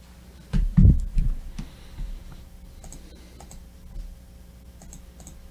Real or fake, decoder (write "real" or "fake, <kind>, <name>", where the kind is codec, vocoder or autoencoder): real